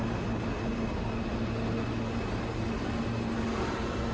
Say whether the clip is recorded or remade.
recorded